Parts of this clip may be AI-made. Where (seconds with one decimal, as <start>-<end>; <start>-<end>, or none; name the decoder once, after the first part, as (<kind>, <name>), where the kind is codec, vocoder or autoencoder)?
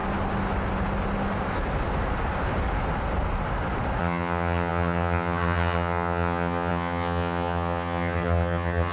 4.0-8.9 (vocoder, HiFi-GAN)